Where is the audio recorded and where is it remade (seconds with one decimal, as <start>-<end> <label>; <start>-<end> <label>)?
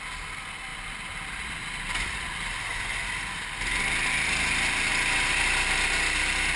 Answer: 0.0-4.9 recorded; 4.9-5.9 remade; 5.9-6.6 recorded